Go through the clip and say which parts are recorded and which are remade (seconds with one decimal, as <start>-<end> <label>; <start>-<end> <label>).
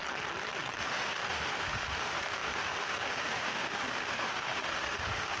0.0-0.8 recorded; 0.8-5.4 remade